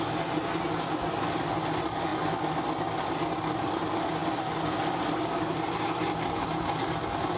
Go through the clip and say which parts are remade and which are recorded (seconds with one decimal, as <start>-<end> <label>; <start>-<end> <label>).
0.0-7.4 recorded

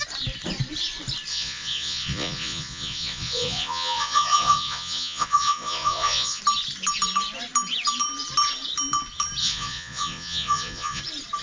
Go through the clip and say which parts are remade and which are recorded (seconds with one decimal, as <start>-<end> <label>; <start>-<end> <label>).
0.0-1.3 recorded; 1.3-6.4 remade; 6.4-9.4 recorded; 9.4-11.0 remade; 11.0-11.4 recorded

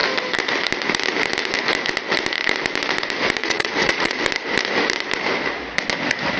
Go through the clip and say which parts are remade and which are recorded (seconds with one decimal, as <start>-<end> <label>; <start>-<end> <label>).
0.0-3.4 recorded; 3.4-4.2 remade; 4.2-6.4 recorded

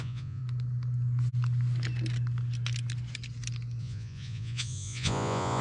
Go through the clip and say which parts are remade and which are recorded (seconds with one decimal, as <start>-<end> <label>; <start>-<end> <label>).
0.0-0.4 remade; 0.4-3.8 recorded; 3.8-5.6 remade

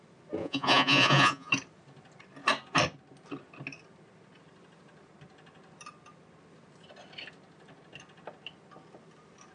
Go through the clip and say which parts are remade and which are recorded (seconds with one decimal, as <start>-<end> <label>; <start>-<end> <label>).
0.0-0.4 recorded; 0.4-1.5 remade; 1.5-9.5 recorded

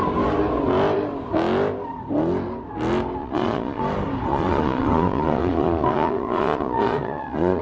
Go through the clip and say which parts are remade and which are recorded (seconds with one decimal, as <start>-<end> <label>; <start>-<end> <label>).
0.0-3.2 recorded; 3.2-3.8 remade; 3.8-4.3 recorded; 4.3-7.6 remade